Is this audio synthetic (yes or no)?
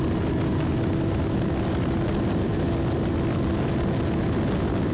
no